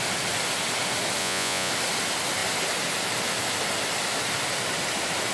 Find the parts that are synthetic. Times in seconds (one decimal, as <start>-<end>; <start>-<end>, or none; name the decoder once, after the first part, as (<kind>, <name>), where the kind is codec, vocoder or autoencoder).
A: 1.2-1.7 (vocoder, Vocos)